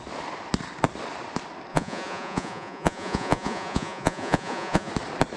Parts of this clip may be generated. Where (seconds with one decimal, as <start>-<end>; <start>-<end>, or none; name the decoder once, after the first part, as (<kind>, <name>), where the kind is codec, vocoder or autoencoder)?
1.7-4.9 (vocoder, Vocos)